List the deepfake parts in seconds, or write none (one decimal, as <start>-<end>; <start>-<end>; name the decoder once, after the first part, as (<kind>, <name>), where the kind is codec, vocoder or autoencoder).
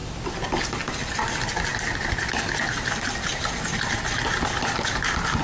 none